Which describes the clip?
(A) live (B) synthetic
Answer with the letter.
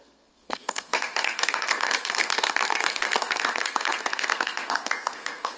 B